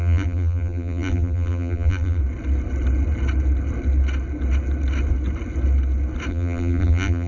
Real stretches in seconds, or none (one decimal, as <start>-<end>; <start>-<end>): 2.2-6.3